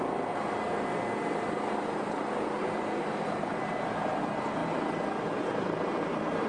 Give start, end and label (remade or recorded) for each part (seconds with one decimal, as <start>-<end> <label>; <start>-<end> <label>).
0.0-6.5 recorded